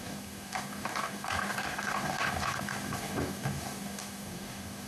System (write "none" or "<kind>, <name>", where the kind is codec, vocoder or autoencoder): codec, DAC